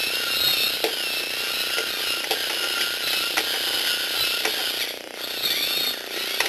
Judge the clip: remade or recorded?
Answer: recorded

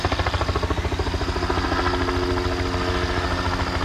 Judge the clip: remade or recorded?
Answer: recorded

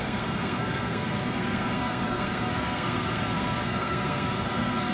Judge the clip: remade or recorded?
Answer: remade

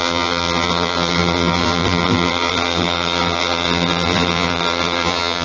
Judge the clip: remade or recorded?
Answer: remade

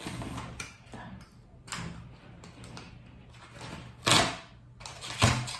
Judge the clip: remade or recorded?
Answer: recorded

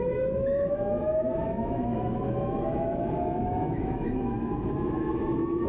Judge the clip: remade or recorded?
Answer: remade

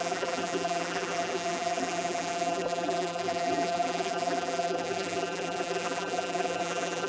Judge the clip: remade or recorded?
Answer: remade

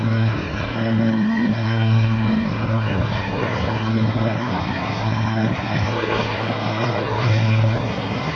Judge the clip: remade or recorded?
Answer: remade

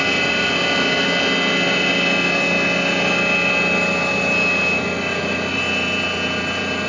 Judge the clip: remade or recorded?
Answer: recorded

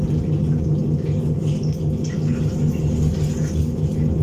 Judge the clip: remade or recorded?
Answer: recorded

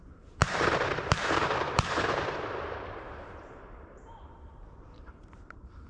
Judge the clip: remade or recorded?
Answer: remade